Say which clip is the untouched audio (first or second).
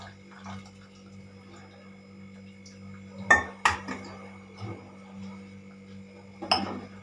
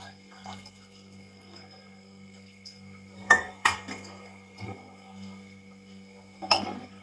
first